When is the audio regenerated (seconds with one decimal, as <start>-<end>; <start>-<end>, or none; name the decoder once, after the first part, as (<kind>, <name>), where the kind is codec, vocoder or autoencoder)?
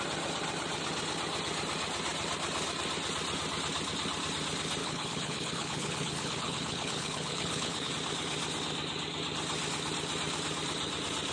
4.8-7.9 (codec, HILCodec)